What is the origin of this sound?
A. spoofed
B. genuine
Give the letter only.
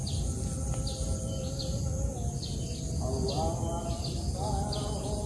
B